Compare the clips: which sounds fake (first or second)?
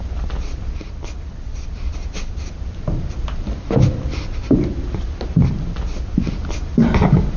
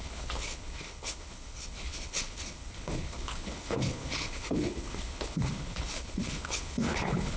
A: second